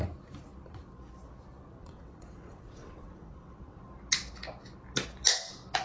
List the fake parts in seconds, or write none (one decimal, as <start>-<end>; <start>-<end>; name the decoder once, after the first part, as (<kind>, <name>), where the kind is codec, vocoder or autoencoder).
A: 1.8-3.8 (vocoder, WaveNeXt)